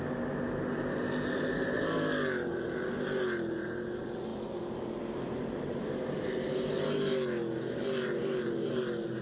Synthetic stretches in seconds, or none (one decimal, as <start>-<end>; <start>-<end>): none